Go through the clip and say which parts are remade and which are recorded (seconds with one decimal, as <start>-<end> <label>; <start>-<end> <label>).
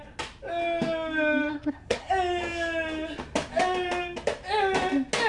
0.0-1.5 recorded; 1.5-2.1 remade; 2.1-5.3 recorded